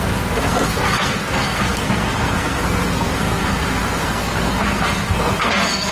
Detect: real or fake fake